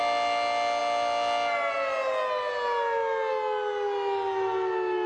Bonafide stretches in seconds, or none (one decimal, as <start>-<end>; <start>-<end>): 0.0-5.1